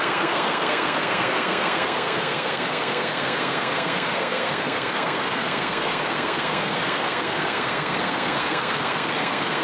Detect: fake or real fake